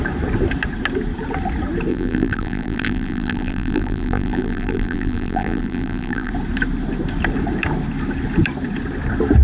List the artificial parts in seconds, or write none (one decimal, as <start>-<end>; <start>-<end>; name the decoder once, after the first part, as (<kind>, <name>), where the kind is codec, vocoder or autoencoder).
1.9-6.3 (vocoder, BigVGAN v2)